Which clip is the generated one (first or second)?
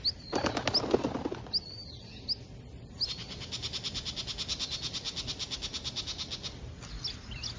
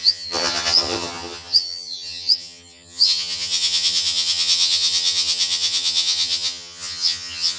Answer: second